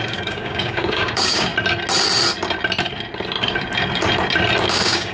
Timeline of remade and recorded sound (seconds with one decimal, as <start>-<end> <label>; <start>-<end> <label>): 0.0-1.5 remade; 1.5-4.6 recorded; 4.6-5.1 remade